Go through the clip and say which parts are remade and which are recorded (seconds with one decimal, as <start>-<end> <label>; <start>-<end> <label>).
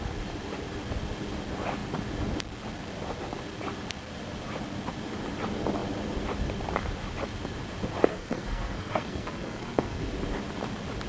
0.0-8.1 recorded; 8.1-10.0 remade; 10.0-11.1 recorded